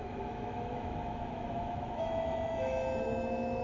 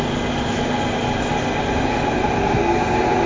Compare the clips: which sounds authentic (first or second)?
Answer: second